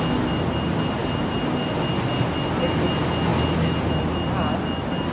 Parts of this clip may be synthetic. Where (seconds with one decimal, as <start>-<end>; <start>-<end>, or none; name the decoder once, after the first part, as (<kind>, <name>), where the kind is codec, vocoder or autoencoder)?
none